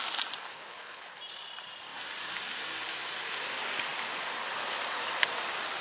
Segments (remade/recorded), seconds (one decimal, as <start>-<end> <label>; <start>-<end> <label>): 0.0-0.5 recorded; 0.5-1.2 remade; 1.2-5.8 recorded